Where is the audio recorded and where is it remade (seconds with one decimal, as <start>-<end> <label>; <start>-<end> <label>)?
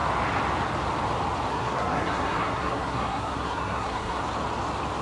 0.0-1.5 recorded; 1.5-4.2 remade; 4.2-5.0 recorded